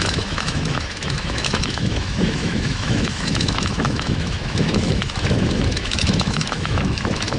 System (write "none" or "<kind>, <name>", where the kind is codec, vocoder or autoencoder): autoencoder, DAC-VAE